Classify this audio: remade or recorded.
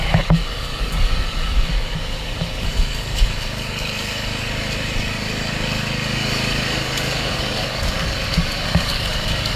remade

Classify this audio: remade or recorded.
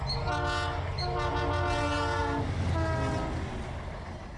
recorded